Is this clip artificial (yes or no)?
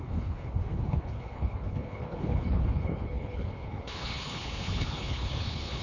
yes